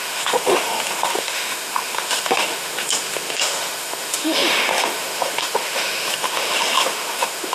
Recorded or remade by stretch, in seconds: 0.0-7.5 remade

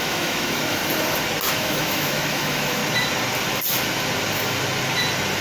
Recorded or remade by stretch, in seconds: 0.0-0.8 remade; 0.8-1.5 recorded; 1.5-2.8 remade; 2.8-5.4 recorded